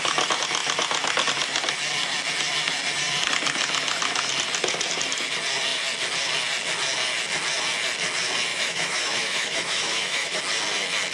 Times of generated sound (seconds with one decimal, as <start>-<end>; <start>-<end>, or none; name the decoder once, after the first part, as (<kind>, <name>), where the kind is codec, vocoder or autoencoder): 8.5-10.4 (autoencoder, DAC-VAE)